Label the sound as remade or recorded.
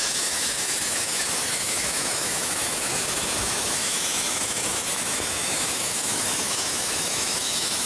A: remade